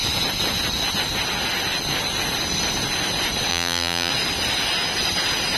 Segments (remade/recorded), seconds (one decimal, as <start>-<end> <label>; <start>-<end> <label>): 0.0-3.5 recorded; 3.5-4.1 remade; 4.1-5.6 recorded